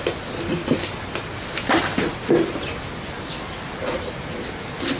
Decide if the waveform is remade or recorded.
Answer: recorded